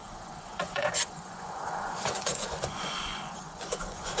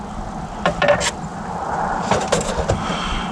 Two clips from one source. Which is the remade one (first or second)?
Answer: first